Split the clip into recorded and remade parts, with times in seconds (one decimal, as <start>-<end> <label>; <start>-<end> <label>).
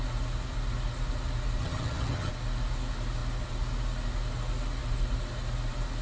0.0-1.6 recorded; 1.6-2.3 remade; 2.3-6.0 recorded